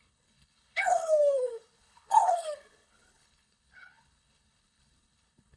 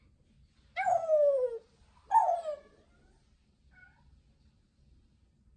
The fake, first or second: first